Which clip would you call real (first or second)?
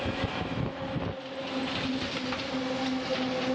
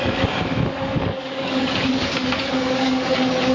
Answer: first